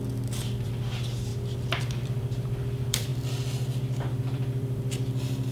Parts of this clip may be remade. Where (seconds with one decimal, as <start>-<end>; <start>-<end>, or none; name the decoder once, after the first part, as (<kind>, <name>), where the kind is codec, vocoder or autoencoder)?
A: 0.0-1.3 (vocoder, BigVGAN v2); 1.8-3.1; 4.2-5.5